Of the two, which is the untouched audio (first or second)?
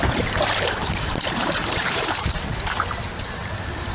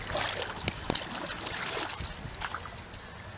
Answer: second